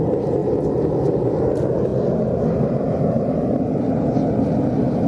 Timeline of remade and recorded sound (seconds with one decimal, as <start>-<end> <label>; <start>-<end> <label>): 0.0-5.1 recorded